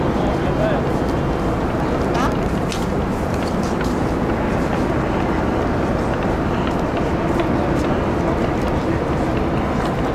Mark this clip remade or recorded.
recorded